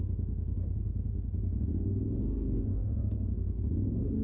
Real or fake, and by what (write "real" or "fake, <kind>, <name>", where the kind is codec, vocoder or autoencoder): fake, autoencoder, DAC-VAE